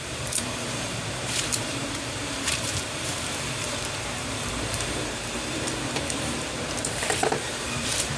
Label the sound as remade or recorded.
remade